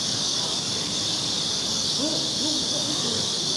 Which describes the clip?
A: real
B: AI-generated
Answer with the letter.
B